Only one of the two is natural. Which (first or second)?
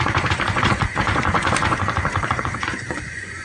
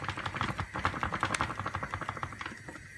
second